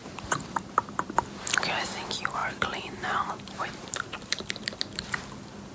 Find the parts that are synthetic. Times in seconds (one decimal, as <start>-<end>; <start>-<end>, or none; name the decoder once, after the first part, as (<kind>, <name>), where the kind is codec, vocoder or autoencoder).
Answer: 0.0-0.6 (vocoder, BigVGAN v2); 2.4-4.8

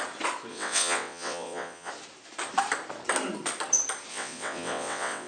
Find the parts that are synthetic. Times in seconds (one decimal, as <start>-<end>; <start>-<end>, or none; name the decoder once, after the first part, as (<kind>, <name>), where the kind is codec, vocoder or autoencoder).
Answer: 0.5-1.9 (vocoder, WaveNeXt); 4.1-5.3

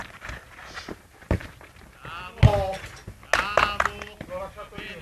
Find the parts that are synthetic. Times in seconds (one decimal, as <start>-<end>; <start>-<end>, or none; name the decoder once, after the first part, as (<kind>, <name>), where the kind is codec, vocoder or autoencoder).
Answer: none

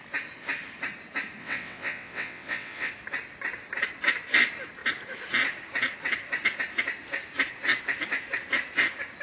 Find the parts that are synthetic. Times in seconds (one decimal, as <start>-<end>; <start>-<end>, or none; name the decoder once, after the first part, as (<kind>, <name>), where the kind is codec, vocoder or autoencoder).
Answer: 1.4-2.9 (vocoder, WaveNeXt)

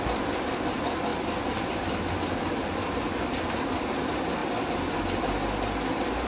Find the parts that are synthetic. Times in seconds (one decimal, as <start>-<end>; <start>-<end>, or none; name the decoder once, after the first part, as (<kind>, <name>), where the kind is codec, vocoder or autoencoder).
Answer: none

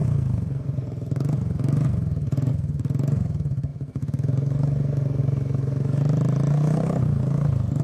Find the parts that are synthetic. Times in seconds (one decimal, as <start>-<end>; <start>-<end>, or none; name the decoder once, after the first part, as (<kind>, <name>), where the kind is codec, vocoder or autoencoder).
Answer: 0.0-6.0 (codec, SNAC); 6.5-7.8

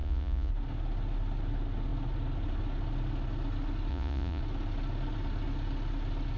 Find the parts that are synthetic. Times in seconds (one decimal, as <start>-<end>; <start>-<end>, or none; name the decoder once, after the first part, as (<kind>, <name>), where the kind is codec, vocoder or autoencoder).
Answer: 0.0-0.5 (vocoder, Vocos); 3.9-4.4